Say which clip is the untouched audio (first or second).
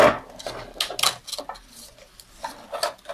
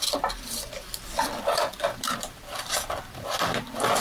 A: first